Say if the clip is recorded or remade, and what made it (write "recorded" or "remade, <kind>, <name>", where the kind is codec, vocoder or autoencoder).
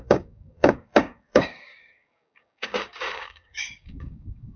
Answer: remade, codec, DAC